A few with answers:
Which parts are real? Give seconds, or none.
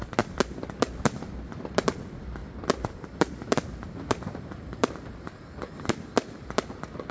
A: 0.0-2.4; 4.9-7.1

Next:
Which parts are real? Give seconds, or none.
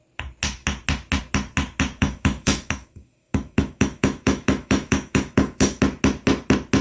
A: 0.0-2.0; 5.8-6.8